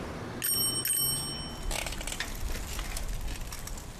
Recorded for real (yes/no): yes